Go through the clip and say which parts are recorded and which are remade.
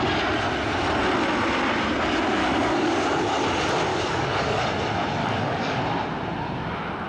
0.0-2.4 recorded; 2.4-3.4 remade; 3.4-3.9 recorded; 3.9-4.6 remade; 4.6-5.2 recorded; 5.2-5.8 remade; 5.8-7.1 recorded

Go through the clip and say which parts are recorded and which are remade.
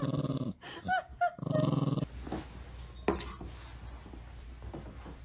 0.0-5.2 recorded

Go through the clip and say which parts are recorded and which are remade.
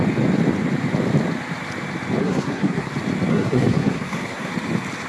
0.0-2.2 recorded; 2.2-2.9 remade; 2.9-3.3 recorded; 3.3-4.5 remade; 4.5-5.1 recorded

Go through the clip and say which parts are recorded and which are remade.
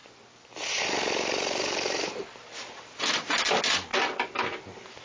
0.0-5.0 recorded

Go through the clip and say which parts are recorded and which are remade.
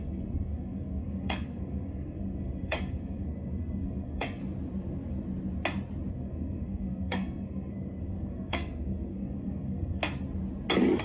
0.0-4.4 remade; 4.4-6.1 recorded; 6.1-10.0 remade; 10.0-11.0 recorded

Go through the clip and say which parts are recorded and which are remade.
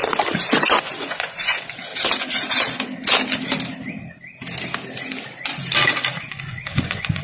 0.0-0.8 recorded; 0.8-1.9 remade; 1.9-6.2 recorded; 6.2-7.2 remade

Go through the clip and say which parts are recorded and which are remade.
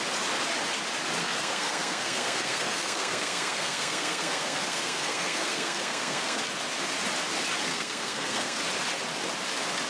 0.0-1.2 recorded; 1.2-6.4 remade; 6.4-7.7 recorded; 7.7-8.6 remade; 8.6-9.9 recorded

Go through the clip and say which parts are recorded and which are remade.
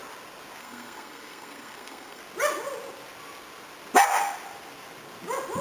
0.0-0.6 recorded; 0.6-2.2 remade; 2.2-5.6 recorded